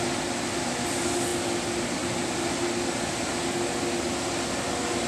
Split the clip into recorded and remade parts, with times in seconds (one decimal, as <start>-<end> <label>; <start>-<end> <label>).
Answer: 0.0-5.1 recorded